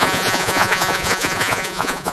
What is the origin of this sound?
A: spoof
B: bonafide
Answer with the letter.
A